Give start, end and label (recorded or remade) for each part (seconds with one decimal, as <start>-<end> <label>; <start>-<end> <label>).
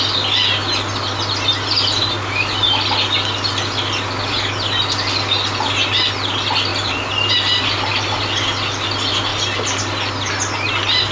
0.0-6.7 recorded; 6.7-7.3 remade; 7.3-11.1 recorded